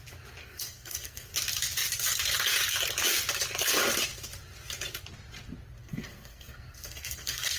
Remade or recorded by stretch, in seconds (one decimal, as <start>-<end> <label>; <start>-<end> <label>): 0.0-0.4 recorded; 0.4-1.3 remade; 1.3-5.8 recorded; 5.8-7.6 remade